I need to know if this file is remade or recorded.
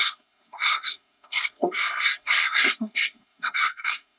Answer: remade